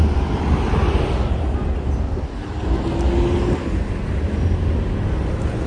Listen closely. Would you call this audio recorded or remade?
recorded